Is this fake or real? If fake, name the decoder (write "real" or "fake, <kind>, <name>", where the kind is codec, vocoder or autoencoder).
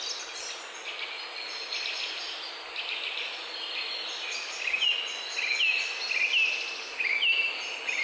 real